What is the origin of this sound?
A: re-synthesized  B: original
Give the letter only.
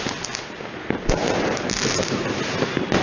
A